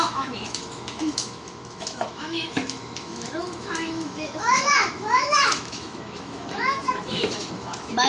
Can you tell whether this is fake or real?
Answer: fake